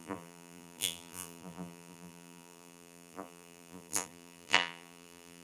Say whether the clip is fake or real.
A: fake